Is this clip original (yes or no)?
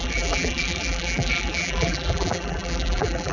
no